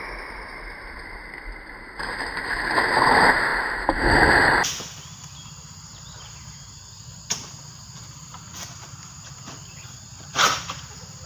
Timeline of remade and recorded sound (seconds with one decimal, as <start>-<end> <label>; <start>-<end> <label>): 0.0-3.5 remade; 3.5-6.3 recorded; 6.3-6.8 remade; 6.8-10.2 recorded; 10.2-11.3 remade